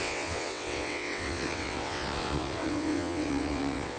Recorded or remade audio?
remade